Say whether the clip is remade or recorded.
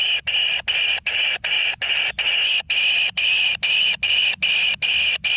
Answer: recorded